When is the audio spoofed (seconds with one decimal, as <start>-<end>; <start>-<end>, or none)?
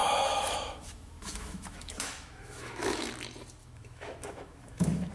0.0-3.1; 3.6-5.1